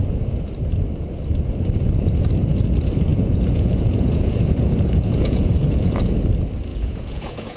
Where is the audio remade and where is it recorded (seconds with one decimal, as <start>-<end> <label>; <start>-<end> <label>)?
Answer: 0.0-3.1 recorded; 3.1-6.1 remade; 6.1-6.7 recorded; 6.7-7.6 remade